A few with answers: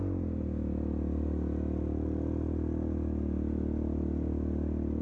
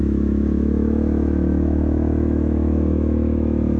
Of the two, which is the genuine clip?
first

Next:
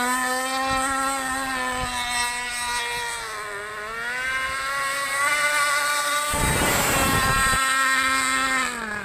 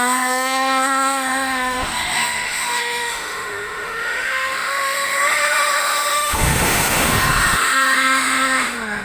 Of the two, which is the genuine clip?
first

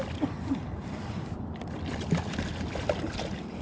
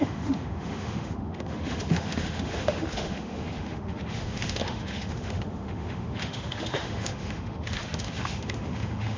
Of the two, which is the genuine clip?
first